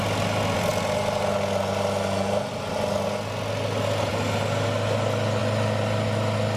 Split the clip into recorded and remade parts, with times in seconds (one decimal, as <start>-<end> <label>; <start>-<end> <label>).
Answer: 0.0-6.6 recorded